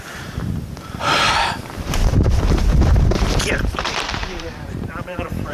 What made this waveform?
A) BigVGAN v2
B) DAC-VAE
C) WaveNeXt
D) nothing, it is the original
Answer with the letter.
A